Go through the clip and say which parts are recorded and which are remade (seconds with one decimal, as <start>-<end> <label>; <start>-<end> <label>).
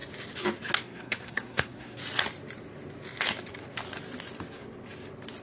0.0-0.8 recorded; 0.8-2.0 remade; 2.0-5.4 recorded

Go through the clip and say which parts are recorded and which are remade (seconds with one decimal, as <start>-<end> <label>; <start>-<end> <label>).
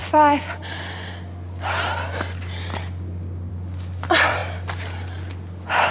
0.0-3.5 recorded; 3.5-4.4 remade; 4.4-5.9 recorded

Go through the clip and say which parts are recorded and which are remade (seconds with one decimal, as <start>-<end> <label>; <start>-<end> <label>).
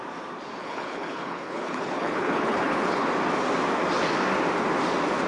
0.0-0.6 recorded; 0.6-3.1 remade; 3.1-5.3 recorded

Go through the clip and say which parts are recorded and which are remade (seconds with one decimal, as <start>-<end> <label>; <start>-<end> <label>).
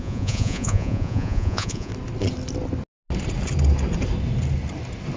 0.0-1.9 remade; 1.9-5.2 recorded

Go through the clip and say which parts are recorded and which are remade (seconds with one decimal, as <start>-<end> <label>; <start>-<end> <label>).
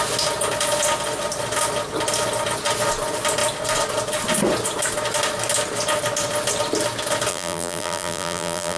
0.0-7.3 recorded; 7.3-8.8 remade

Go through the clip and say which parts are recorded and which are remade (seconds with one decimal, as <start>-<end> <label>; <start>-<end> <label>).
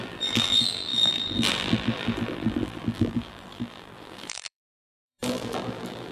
0.0-6.1 remade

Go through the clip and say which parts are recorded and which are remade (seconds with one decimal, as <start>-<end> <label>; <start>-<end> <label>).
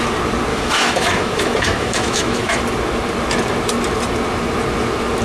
0.0-0.5 recorded; 0.5-2.6 remade; 2.6-5.2 recorded